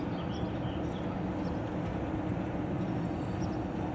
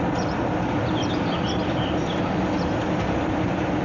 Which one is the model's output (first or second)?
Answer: second